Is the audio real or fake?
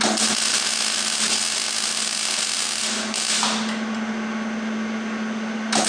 real